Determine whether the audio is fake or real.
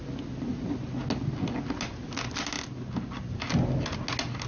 real